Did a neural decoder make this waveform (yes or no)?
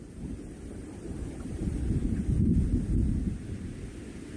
no